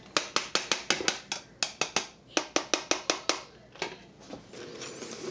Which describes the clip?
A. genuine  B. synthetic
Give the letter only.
A